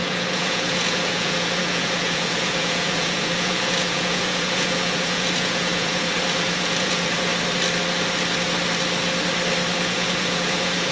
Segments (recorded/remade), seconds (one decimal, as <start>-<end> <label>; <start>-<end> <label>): 0.0-7.3 remade; 7.3-9.8 recorded; 9.8-10.9 remade